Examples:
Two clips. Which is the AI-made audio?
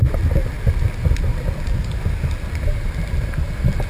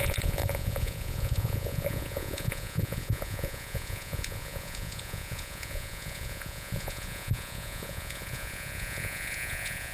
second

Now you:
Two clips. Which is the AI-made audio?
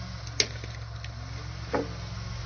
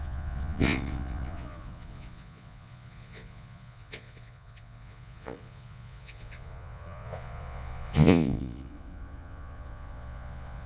second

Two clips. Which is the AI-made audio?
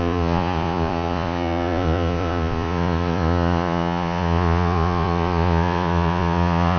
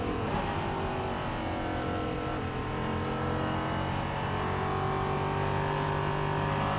first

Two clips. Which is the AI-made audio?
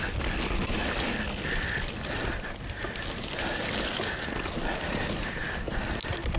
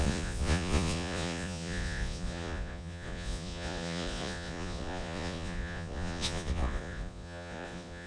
second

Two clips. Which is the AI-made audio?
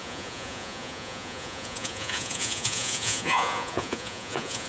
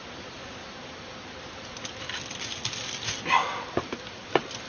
first